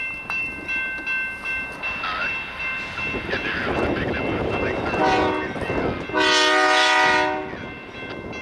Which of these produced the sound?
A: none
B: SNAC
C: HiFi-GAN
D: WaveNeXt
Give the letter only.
A